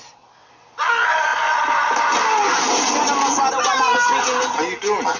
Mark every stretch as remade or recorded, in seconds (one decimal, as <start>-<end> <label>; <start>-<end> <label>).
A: 0.0-5.2 recorded